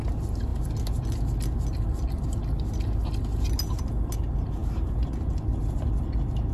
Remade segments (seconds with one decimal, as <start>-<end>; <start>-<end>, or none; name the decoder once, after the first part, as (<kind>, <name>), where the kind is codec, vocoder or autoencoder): none